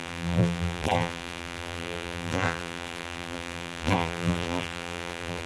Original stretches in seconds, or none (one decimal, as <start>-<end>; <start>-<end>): none